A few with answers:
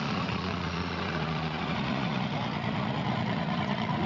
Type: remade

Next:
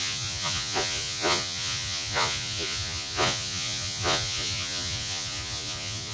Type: remade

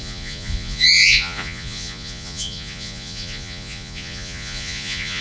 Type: remade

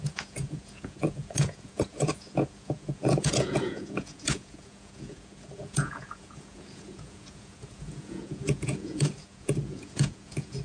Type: remade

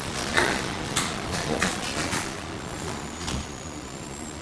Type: remade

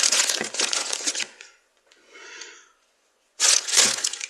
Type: remade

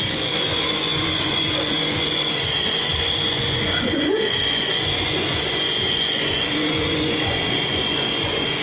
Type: remade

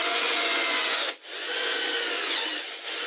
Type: remade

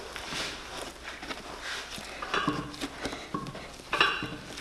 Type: recorded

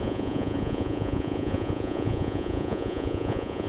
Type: remade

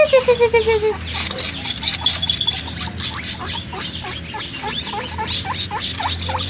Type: recorded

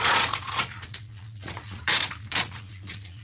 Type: remade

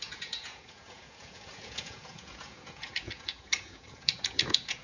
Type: remade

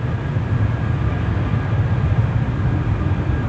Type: recorded